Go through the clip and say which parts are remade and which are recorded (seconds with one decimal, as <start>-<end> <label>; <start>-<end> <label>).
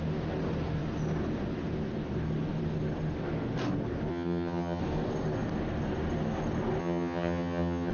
0.0-4.1 recorded; 4.1-4.8 remade; 4.8-6.8 recorded; 6.8-7.9 remade